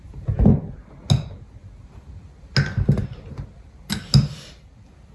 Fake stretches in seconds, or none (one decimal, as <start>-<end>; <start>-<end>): none